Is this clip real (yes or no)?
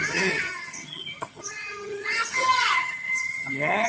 no